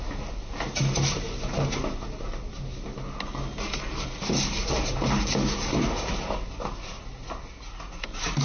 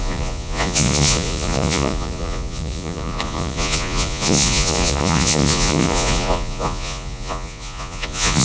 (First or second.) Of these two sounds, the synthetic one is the second